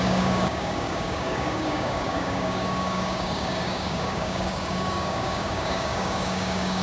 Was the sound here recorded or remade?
remade